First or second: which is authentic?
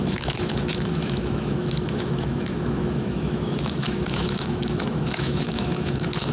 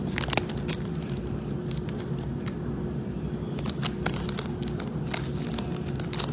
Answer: second